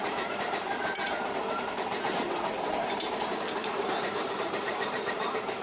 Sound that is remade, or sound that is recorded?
remade